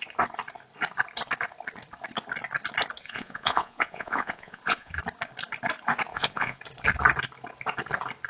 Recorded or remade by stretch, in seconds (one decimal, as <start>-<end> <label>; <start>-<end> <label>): 0.0-3.0 recorded; 3.0-4.9 remade; 4.9-6.1 recorded; 6.1-6.6 remade; 6.6-8.3 recorded